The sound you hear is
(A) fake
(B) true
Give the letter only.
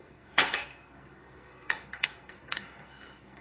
A